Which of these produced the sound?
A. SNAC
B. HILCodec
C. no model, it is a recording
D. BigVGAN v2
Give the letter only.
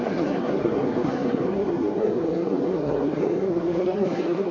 A